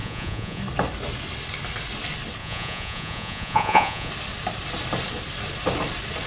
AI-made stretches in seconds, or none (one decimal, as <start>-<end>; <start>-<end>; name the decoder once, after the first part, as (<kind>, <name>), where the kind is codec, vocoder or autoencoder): 0.0-0.6 (vocoder, Vocos); 2.4-4.1